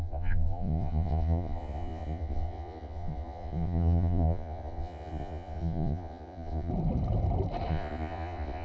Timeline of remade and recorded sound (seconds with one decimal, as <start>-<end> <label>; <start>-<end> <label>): 0.0-6.7 remade; 6.7-7.7 recorded; 7.7-8.6 remade

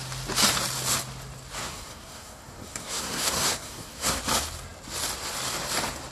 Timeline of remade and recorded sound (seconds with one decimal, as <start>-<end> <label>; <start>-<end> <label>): 0.0-1.6 recorded; 1.6-4.2 remade; 4.2-6.1 recorded

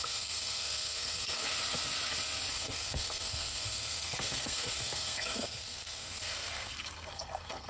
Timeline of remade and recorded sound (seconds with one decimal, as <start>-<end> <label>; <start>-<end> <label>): 0.0-1.4 remade; 1.4-2.5 recorded; 2.5-7.7 remade

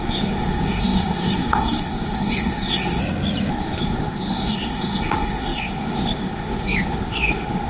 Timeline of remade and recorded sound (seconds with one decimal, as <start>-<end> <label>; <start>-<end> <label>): 0.0-3.0 remade; 3.0-3.5 recorded; 3.5-7.7 remade

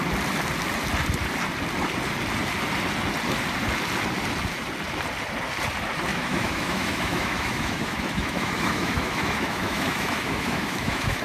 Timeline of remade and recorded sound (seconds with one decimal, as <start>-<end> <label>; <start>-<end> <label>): 0.0-6.1 recorded; 6.1-11.2 remade

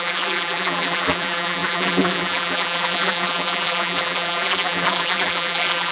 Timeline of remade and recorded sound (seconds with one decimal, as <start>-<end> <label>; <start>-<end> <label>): 0.0-5.9 remade